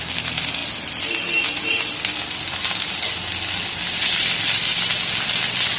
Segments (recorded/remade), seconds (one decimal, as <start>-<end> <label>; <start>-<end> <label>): 0.0-5.8 recorded